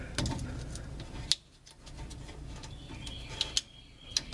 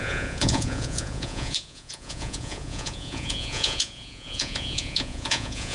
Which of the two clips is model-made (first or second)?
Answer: second